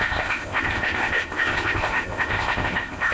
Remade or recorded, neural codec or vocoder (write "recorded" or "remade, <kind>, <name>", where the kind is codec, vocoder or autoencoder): remade, codec, ZipCodec